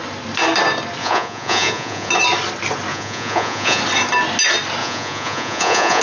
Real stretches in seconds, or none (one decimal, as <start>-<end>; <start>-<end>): 0.0-1.0; 2.1-2.9; 3.8-4.8